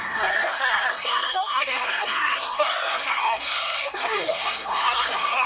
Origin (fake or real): fake